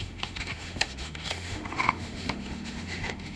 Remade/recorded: remade